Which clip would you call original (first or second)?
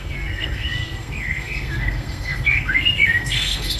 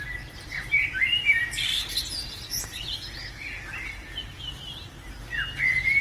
second